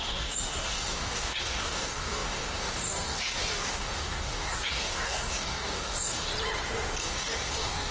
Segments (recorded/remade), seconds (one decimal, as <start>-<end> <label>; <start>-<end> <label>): 0.0-6.3 remade; 6.3-7.0 recorded; 7.0-7.9 remade